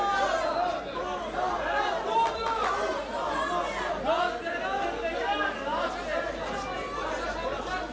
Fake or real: real